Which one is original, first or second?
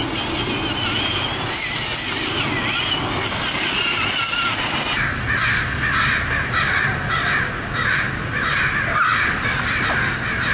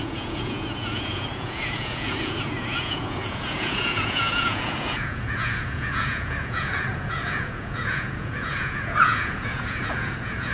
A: first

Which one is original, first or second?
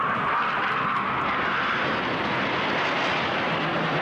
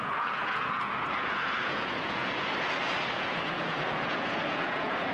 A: first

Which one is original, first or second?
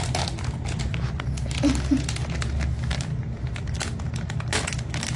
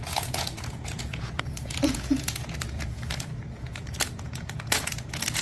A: first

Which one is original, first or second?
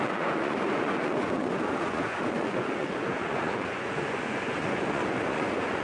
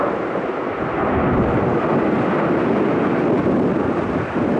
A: second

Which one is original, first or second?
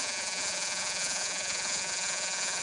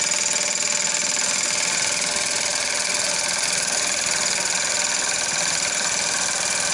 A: second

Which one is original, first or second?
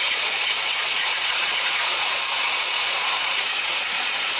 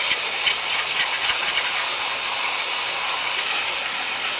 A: second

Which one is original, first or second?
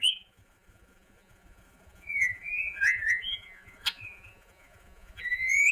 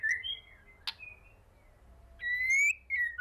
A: second